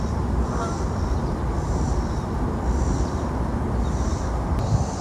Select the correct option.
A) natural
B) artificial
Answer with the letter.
A